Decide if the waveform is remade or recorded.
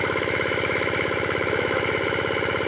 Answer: remade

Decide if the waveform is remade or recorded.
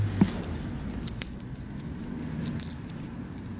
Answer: recorded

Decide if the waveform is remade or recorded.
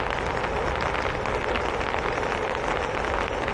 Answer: recorded